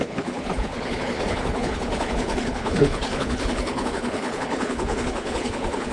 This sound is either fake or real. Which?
fake